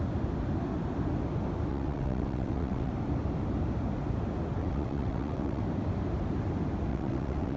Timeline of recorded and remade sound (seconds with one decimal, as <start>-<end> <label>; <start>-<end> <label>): 0.0-1.7 recorded; 1.7-2.9 remade; 2.9-4.6 recorded; 4.6-5.6 remade; 5.6-6.9 recorded; 6.9-7.6 remade